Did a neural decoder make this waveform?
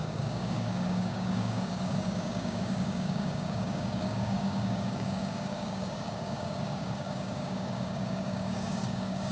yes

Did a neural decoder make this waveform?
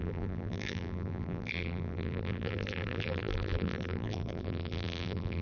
yes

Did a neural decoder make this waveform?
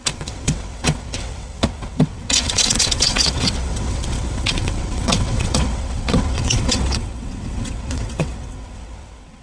yes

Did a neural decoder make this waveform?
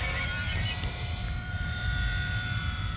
yes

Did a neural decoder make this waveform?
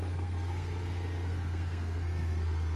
yes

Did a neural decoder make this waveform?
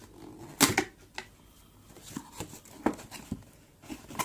no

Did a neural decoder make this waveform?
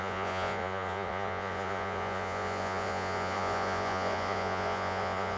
yes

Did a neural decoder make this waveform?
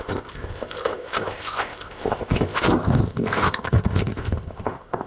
yes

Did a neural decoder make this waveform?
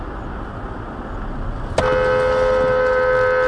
no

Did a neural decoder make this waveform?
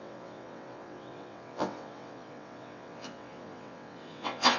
yes